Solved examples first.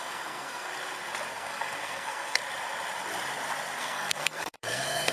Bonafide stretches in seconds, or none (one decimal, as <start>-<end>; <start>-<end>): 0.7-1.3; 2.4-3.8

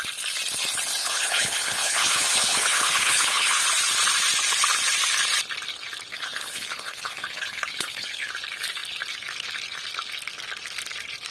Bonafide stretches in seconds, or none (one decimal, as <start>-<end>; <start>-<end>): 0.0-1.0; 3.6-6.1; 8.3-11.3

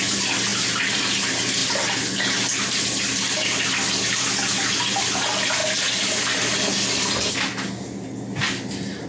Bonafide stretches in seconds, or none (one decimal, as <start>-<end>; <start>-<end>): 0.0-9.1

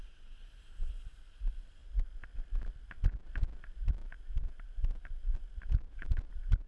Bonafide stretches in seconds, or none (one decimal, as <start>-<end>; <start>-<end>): 0.0-0.4; 1.2-4.0

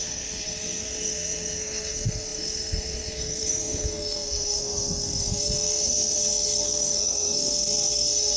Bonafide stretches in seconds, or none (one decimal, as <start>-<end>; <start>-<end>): none

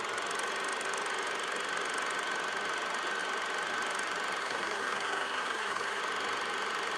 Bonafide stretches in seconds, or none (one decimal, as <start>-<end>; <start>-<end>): 0.0-4.4; 6.0-7.0